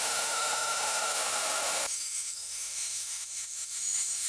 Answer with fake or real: fake